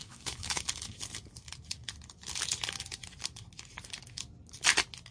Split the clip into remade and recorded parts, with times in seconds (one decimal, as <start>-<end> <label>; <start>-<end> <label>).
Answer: 0.0-1.0 remade; 1.0-5.1 recorded